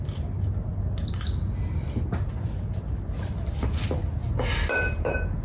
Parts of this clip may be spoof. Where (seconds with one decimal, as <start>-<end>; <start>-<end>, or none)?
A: none